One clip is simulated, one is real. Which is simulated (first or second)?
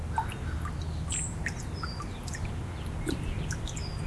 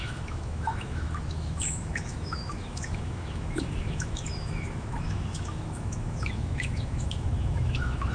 second